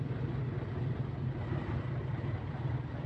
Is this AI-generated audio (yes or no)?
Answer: no